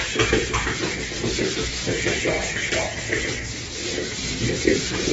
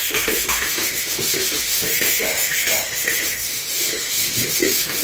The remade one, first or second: second